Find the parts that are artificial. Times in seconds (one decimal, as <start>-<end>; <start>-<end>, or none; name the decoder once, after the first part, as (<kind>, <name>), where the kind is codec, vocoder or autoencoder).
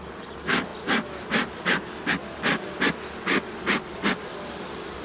none